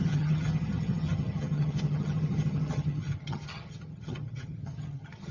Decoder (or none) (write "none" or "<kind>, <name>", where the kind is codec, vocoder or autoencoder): vocoder, HiFi-GAN